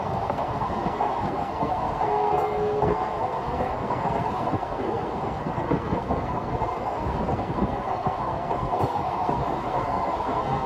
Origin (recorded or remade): remade